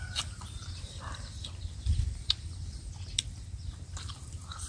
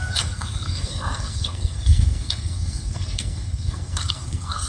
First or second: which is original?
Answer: first